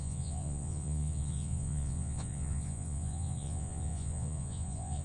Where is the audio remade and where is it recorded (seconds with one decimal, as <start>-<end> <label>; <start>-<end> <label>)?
0.0-5.0 remade